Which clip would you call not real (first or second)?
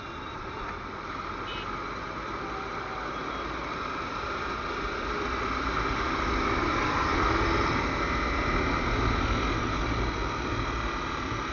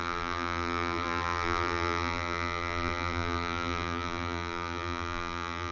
second